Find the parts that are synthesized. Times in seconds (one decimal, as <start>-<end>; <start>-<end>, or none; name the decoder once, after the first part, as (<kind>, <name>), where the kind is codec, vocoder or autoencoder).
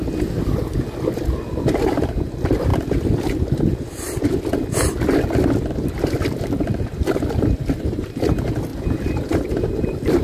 8.7-10.2 (vocoder, BigVGAN v2)